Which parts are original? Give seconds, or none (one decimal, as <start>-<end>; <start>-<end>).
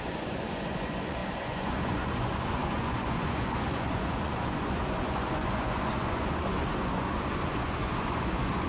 none